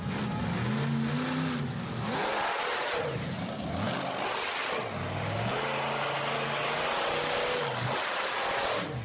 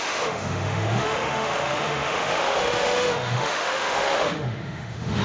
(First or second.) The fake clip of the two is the second